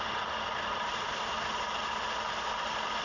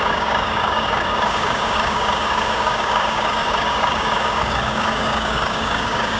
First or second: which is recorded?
first